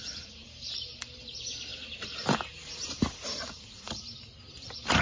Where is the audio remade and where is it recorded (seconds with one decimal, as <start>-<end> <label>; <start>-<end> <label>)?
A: 0.0-5.0 remade